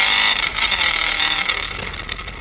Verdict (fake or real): real